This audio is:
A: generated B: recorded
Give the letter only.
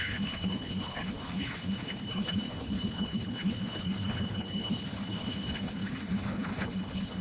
A